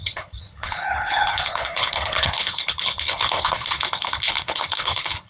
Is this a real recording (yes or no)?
no